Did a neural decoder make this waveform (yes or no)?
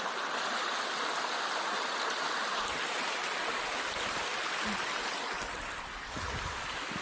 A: no